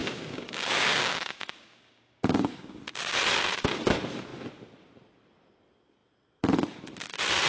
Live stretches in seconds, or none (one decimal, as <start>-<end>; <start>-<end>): 2.8-7.5